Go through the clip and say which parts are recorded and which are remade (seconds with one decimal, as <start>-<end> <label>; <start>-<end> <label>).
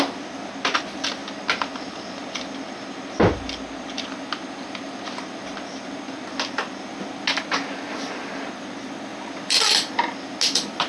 0.0-9.1 recorded; 9.1-9.9 remade; 9.9-10.9 recorded